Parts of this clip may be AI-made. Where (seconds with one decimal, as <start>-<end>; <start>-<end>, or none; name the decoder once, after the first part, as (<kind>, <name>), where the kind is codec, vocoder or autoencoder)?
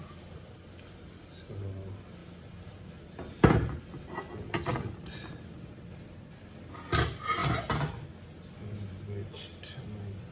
2.2-3.8 (vocoder, BigVGAN v2); 4.7-5.5